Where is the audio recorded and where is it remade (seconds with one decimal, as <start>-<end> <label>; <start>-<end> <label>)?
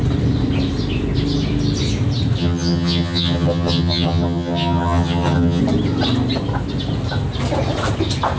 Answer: 0.0-2.4 recorded; 2.4-5.6 remade; 5.6-8.4 recorded